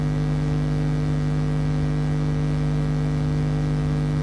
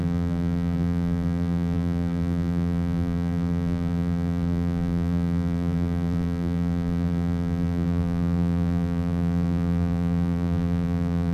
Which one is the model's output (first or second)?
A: second